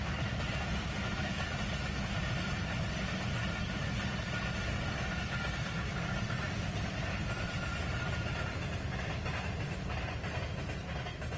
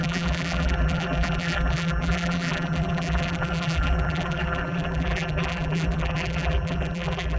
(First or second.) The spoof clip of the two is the second